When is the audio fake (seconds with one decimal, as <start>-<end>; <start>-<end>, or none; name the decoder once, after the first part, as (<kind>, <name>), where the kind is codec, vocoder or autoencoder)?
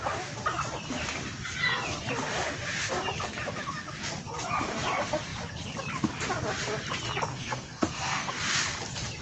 7.3-8.3 (codec, SNAC)